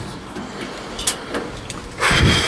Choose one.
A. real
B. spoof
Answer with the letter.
A